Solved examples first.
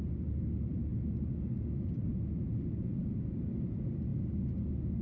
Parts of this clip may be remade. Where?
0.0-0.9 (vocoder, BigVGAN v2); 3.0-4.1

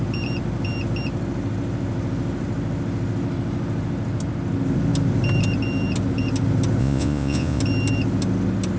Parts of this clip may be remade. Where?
6.8-7.6 (vocoder, Vocos)

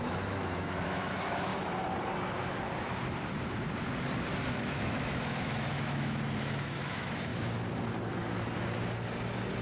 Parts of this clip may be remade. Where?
0.0-1.5 (autoencoder, DAC-VAE); 4.5-7.3

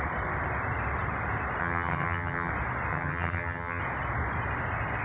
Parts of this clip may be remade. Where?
1.6-2.5 (vocoder, HiFi-GAN); 2.9-3.8

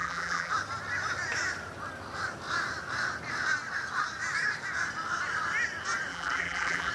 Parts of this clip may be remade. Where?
0.0-0.5 (vocoder, BigVGAN v2); 6.1-6.9

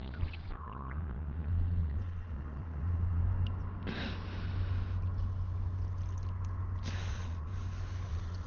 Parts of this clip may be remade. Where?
0.0-3.2 (vocoder, Vocos); 7.1-7.5; 8.1-8.5

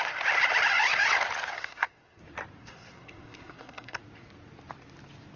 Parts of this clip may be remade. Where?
1.5-2.2 (codec, SNAC); 2.6-4.0